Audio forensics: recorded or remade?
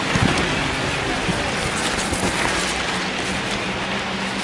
recorded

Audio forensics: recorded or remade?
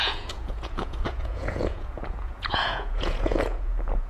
remade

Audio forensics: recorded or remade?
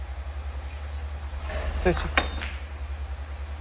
recorded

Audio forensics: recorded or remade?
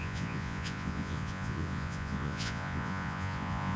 remade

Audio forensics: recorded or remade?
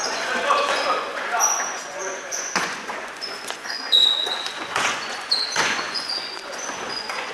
remade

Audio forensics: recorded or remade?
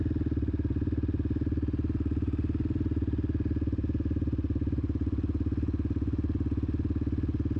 recorded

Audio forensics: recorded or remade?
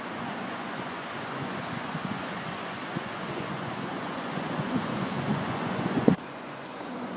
remade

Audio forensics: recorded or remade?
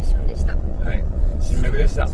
remade